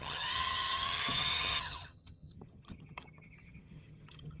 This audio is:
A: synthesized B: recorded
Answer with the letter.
A